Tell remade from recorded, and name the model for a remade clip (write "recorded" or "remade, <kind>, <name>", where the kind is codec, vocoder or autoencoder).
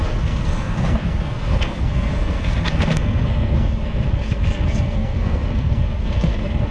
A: remade, codec, SNAC